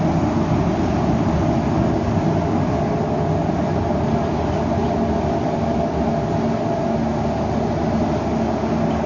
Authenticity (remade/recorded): recorded